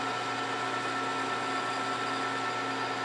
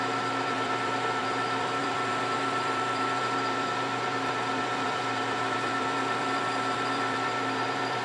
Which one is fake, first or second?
second